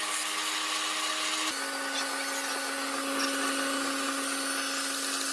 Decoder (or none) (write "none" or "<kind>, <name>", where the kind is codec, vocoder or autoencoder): none